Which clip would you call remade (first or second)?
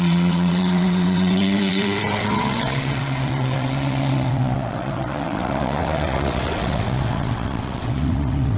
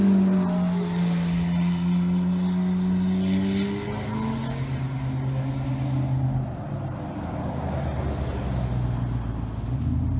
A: first